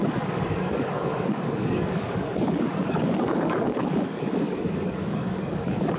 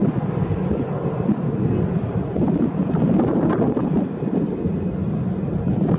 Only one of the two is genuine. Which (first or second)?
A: second